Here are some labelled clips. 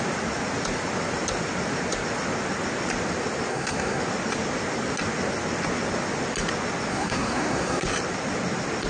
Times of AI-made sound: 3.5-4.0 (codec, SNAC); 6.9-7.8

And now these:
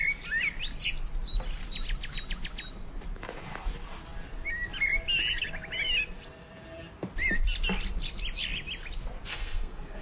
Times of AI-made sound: 9.3-10.0 (codec, SNAC)

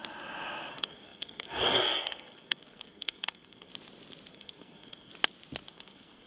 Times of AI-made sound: 0.7-3.7 (codec, SNAC); 4.3-5.1; 5.7-6.3